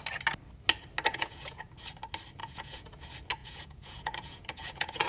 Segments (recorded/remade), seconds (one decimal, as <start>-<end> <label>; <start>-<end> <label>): 0.0-1.1 recorded; 1.1-1.7 remade; 1.7-2.4 recorded; 2.4-2.9 remade; 2.9-3.4 recorded; 3.4-5.1 remade